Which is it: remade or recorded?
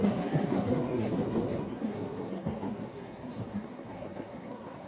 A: remade